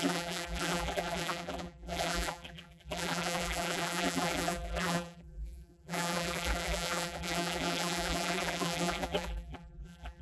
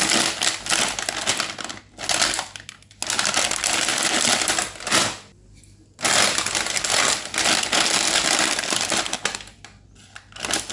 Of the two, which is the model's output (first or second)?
first